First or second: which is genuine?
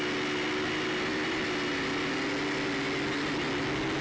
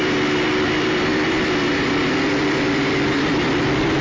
first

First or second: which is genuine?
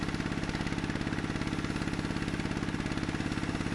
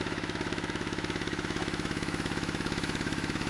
first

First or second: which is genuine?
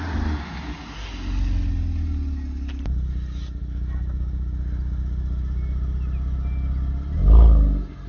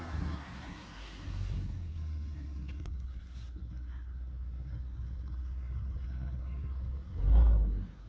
first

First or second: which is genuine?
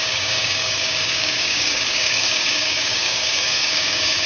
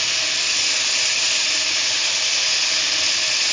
second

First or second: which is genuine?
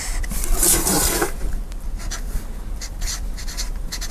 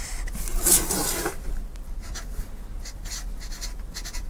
second